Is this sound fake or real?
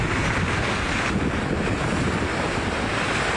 real